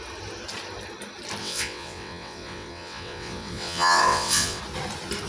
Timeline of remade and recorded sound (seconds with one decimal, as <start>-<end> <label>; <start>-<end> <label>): 0.0-1.4 recorded; 1.4-4.6 remade; 4.6-5.3 recorded